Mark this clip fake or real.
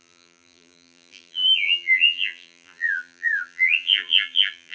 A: fake